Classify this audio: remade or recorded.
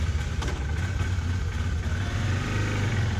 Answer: recorded